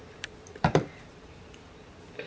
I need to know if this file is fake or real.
fake